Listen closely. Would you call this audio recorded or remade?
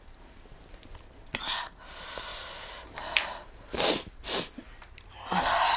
recorded